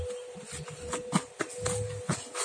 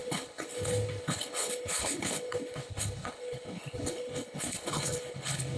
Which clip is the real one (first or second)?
first